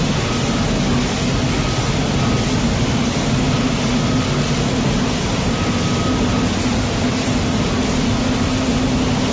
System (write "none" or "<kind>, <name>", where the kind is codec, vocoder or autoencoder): none